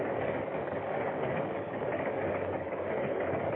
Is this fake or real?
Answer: fake